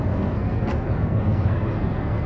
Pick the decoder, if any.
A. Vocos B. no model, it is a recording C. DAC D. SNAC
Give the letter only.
D